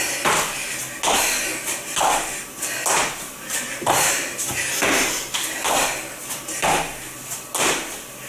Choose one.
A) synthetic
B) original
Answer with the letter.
B